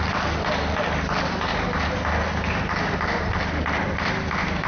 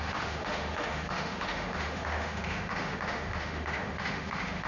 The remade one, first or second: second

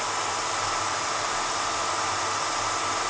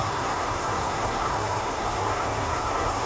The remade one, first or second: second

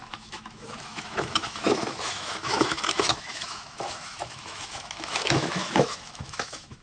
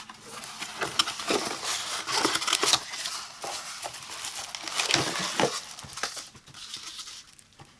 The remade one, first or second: first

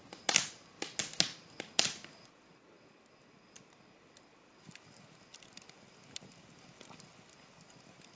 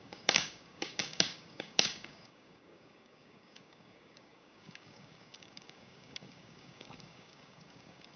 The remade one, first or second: second